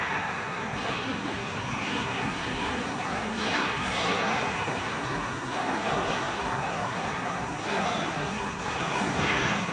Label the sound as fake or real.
fake